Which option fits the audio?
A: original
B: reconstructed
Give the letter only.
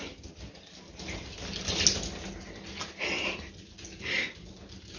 A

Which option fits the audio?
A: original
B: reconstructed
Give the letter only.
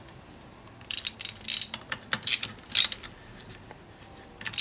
A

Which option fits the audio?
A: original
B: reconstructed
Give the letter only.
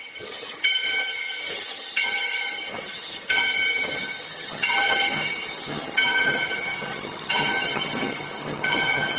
B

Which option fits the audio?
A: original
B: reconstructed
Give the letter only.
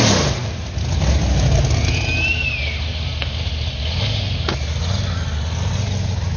A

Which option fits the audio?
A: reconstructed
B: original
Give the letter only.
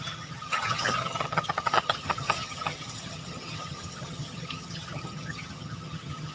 A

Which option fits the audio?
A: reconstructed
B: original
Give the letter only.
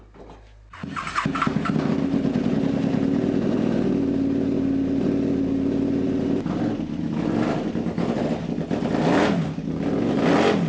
B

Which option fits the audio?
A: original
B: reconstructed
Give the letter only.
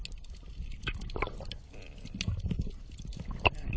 A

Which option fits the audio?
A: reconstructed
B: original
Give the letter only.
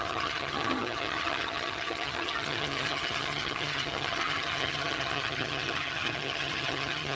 A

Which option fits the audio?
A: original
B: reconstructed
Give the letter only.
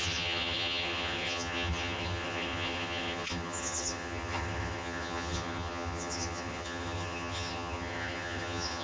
B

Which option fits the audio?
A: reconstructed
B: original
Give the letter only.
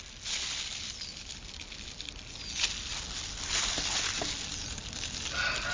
B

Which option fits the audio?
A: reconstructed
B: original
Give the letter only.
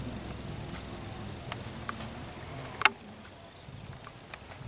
B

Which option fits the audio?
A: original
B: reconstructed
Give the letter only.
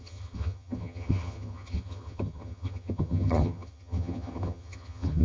B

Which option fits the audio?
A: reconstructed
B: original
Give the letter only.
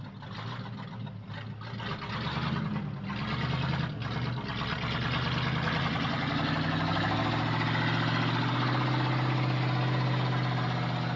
B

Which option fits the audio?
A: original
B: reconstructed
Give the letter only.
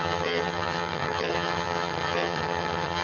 B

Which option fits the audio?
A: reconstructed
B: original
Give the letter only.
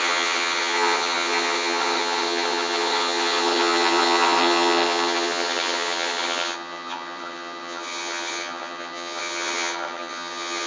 A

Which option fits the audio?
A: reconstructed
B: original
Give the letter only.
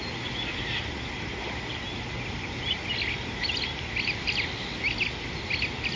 B